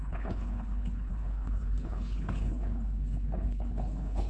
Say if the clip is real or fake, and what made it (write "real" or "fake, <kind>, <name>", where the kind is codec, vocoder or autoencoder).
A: fake, codec, HILCodec